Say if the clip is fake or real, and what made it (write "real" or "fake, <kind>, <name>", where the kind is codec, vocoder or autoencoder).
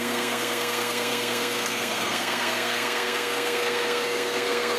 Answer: fake, codec, SNAC